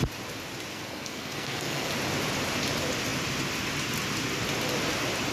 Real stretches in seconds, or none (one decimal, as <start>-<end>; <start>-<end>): 0.0-0.7; 1.9-5.3